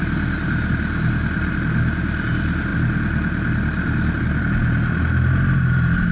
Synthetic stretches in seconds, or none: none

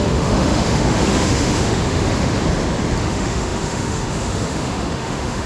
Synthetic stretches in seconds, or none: 0.0-2.3 (autoencoder, DAC-VAE); 3.0-5.5

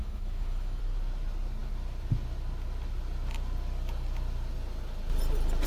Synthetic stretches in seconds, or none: 0.0-0.8 (autoencoder, DAC-VAE)

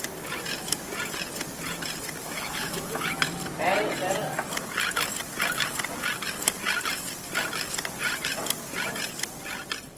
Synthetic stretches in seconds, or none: 2.2-3.2 (autoencoder, DAC-VAE)

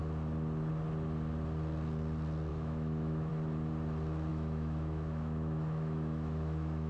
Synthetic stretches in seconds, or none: 2.5-3.3 (autoencoder, DAC-VAE); 4.3-6.9

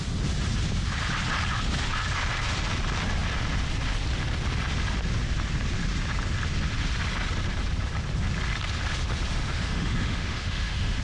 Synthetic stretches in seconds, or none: 9.3-11.0 (autoencoder, DAC-VAE)

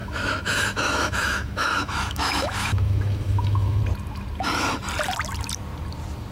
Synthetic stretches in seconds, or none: 0.0-3.8 (autoencoder, DAC-VAE)